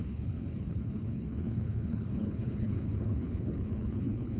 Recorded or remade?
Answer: remade